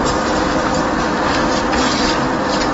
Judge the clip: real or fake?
real